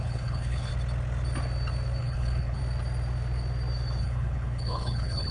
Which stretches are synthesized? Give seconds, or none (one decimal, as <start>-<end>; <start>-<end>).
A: 0.0-0.7; 2.0-2.6; 4.0-5.3